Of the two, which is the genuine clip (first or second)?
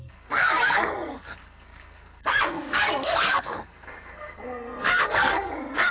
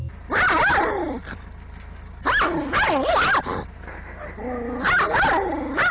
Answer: second